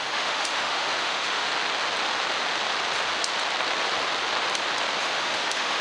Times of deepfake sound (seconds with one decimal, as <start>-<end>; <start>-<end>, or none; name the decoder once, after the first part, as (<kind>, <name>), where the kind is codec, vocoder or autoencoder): 0.0-1.5 (autoencoder, DAC-VAE); 5.0-5.8